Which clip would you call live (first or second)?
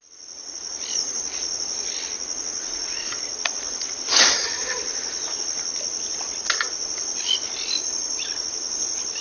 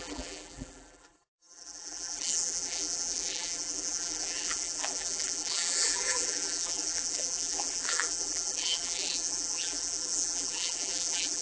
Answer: first